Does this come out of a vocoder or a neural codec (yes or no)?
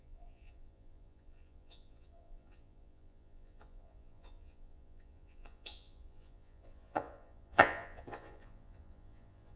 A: yes